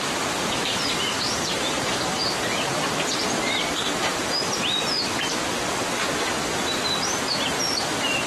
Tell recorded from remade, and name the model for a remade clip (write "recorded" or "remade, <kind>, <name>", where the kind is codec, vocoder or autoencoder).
remade, vocoder, BigVGAN v2